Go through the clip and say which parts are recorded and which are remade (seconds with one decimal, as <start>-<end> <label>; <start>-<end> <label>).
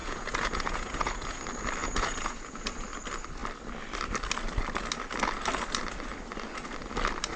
0.0-1.4 remade; 1.4-1.8 recorded; 1.8-2.7 remade; 2.7-7.4 recorded